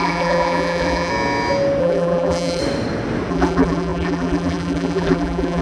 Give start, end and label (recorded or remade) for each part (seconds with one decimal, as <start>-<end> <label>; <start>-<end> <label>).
0.0-1.1 remade; 1.1-1.8 recorded; 1.8-2.6 remade; 2.6-3.3 recorded; 3.3-5.6 remade